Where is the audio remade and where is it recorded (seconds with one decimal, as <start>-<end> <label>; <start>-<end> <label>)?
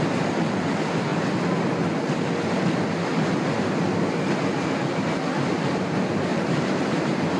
0.0-6.3 recorded; 6.3-7.4 remade